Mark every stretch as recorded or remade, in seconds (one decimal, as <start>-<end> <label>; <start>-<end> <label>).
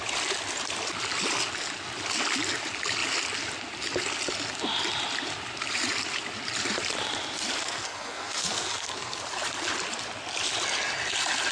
0.0-7.6 recorded; 7.6-9.2 remade; 9.2-11.5 recorded